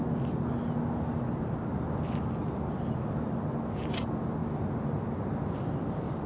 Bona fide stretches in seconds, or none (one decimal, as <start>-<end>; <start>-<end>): 0.0-6.3